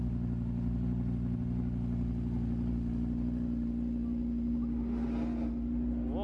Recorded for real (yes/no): yes